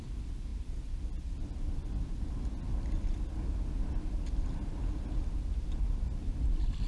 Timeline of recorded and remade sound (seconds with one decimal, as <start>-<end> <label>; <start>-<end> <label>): 0.0-0.5 recorded; 0.5-2.4 remade; 2.4-6.9 recorded